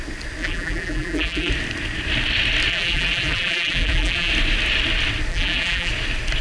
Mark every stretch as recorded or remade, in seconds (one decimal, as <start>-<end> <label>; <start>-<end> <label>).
0.0-0.4 recorded; 0.4-1.5 remade; 1.5-2.7 recorded; 2.7-4.3 remade; 4.3-5.3 recorded; 5.3-5.9 remade; 5.9-6.4 recorded